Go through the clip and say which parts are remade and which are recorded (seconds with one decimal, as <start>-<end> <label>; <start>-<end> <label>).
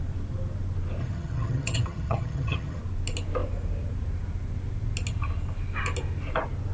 0.0-1.0 recorded; 1.0-2.8 remade; 2.8-6.7 recorded